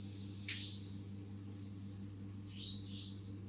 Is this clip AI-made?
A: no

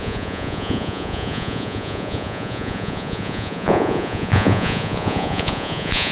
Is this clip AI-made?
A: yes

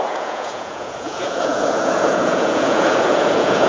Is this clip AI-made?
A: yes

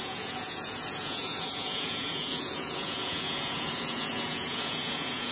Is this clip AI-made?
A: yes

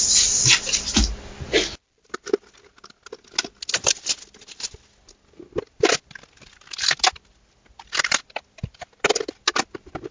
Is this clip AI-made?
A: no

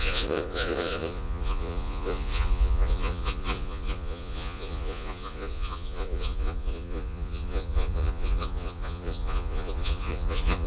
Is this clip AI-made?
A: yes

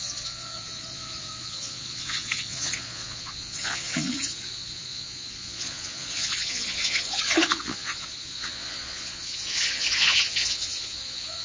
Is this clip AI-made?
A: yes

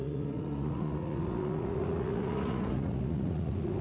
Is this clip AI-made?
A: yes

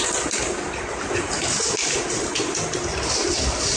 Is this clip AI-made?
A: no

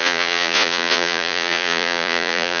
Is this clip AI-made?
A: yes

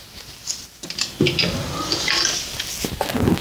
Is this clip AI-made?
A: no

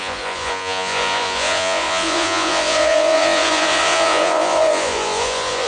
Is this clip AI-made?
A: yes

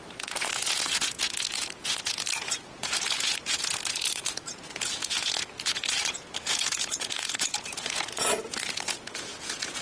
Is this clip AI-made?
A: yes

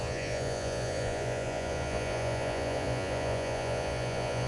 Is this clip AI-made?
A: yes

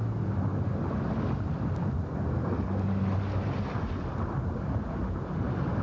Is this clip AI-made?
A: no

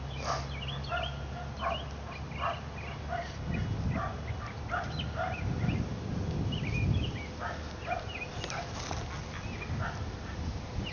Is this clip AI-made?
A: no